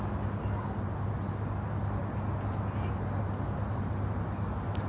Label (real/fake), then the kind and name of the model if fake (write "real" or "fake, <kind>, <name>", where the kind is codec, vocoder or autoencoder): real